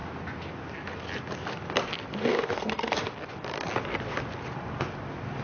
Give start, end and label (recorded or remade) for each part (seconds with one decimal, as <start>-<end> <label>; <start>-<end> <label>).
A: 0.0-2.2 recorded; 2.2-3.0 remade; 3.0-5.4 recorded